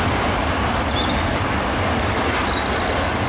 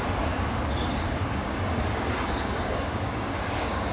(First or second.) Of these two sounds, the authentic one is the first